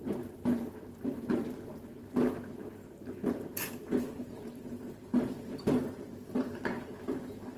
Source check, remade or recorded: remade